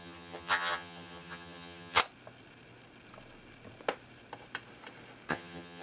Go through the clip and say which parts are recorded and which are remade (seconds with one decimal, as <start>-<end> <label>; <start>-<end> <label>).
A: 0.0-2.0 remade; 2.0-5.3 recorded; 5.3-5.8 remade